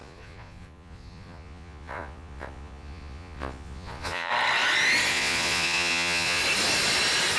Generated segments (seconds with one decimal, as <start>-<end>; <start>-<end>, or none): 0.0-4.3; 5.1-6.4